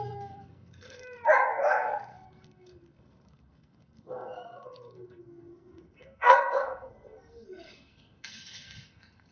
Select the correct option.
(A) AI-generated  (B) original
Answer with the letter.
A